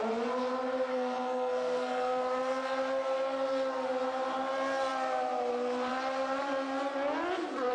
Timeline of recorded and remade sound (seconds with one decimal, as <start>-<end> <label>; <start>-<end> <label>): 0.0-0.9 recorded; 0.9-2.2 remade; 2.2-7.7 recorded